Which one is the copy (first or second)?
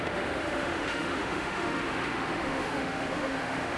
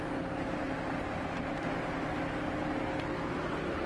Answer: first